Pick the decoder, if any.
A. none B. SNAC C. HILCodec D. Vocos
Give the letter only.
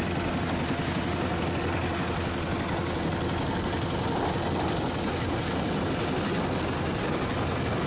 A